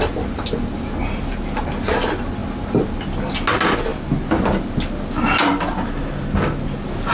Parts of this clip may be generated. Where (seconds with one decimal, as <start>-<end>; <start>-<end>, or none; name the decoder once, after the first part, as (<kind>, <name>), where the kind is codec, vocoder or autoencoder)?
none